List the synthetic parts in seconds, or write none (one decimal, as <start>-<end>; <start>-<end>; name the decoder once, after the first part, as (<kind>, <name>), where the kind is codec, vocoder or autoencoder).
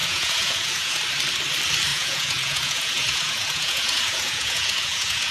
0.0-1.0 (vocoder, Vocos); 1.9-5.3